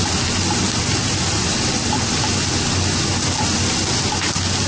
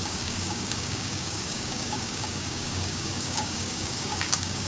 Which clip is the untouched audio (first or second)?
first